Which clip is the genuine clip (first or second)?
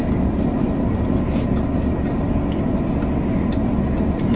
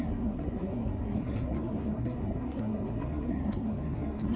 first